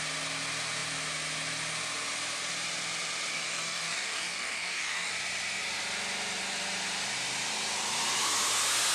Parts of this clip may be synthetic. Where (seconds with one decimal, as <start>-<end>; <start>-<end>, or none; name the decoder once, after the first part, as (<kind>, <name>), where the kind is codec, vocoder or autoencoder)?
3.3-5.1 (codec, DAC)